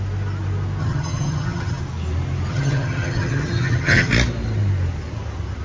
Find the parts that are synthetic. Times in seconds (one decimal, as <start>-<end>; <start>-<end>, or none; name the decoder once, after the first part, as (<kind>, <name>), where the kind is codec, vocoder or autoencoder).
0.8-1.8 (vocoder, HiFi-GAN); 2.5-4.1

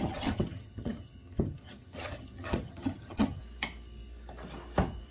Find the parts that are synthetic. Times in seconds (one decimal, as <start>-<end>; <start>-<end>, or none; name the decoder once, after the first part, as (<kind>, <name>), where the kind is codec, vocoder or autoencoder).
0.0-3.4 (vocoder, HiFi-GAN)